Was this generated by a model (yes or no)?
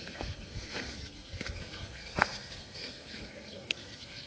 yes